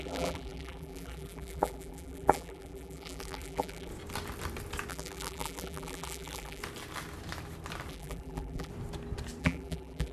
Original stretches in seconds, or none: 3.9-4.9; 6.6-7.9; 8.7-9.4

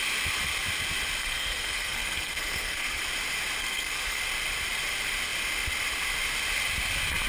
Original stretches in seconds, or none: 0.0-1.2; 3.0-3.6; 4.2-7.3

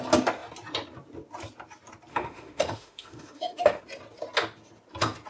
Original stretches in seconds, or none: 0.0-2.1; 3.8-5.3

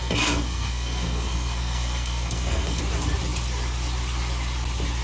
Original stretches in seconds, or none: 2.8-5.0